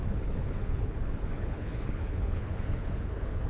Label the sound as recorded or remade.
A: remade